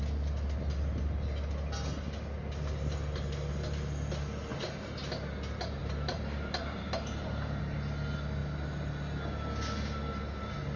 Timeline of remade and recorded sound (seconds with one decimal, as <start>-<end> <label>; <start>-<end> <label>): 0.0-4.5 recorded; 4.5-5.1 remade; 5.1-5.8 recorded; 5.8-7.6 remade; 7.6-8.4 recorded; 8.4-8.9 remade; 8.9-10.8 recorded